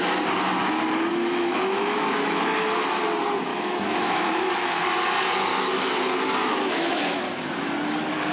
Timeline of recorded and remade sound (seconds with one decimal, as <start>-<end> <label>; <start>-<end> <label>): 0.0-1.1 recorded; 1.1-2.4 remade; 2.4-3.5 recorded; 3.5-4.8 remade; 4.8-5.5 recorded; 5.5-6.0 remade; 6.0-6.4 recorded; 6.4-7.2 remade; 7.2-8.3 recorded

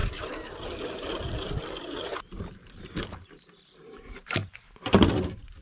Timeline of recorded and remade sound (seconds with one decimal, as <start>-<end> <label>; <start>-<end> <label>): 0.0-0.8 remade; 0.8-2.1 recorded; 2.1-5.1 remade; 5.1-5.6 recorded